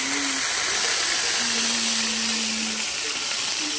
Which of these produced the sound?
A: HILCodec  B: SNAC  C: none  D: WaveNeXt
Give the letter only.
C